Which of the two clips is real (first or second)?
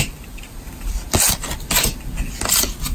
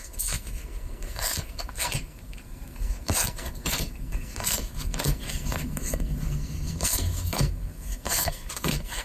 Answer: first